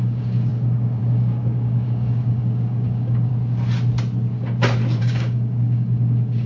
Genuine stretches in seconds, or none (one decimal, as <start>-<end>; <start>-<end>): 3.3-5.0

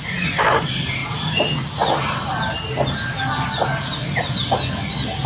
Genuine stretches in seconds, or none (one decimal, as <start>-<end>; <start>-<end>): 0.0-5.3

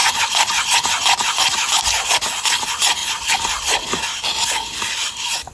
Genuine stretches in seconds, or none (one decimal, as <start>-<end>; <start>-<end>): 0.0-5.5